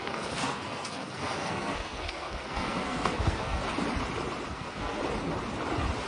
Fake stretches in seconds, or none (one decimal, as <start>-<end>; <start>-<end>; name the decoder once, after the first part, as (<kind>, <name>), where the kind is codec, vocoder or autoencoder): 0.0-3.6 (codec, SNAC); 4.5-5.0